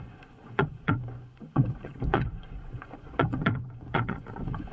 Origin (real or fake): fake